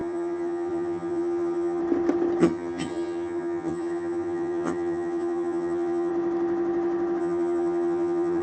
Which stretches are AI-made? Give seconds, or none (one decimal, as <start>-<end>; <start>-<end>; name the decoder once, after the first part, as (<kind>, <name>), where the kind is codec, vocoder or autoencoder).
0.0-1.8 (vocoder, HiFi-GAN); 2.4-6.1; 7.2-8.4